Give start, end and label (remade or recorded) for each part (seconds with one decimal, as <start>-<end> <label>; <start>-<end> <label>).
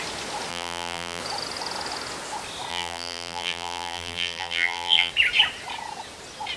0.0-0.5 recorded; 0.5-1.2 remade; 1.2-2.7 recorded; 2.7-5.1 remade; 5.1-6.6 recorded